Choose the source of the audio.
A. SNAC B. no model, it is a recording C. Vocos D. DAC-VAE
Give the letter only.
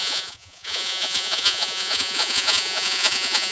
C